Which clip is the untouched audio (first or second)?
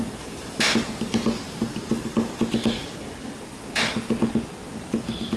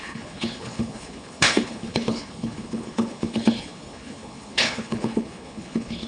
first